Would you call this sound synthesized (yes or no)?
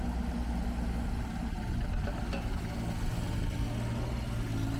no